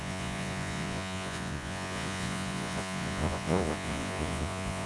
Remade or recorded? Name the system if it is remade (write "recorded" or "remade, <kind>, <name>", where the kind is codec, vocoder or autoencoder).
remade, vocoder, Vocos